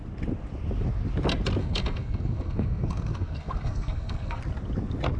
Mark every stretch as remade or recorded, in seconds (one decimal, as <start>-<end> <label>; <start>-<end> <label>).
0.0-1.6 recorded; 1.6-4.4 remade; 4.4-5.2 recorded